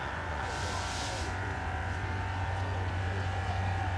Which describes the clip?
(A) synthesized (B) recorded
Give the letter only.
A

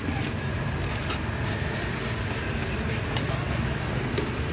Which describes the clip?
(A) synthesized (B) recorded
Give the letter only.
B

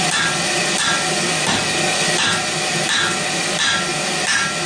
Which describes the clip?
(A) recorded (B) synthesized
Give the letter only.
A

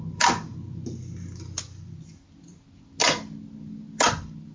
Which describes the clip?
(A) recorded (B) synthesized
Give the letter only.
A